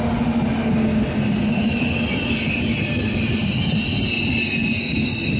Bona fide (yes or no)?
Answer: yes